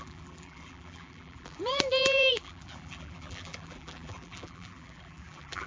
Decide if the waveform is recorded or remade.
remade